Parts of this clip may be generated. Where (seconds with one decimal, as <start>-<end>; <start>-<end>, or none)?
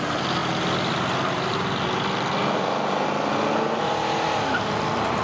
none